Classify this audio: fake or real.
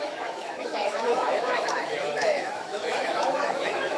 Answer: fake